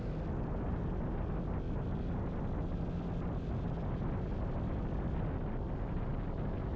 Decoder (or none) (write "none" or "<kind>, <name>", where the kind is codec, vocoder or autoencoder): none